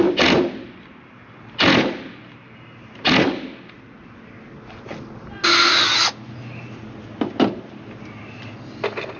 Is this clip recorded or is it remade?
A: recorded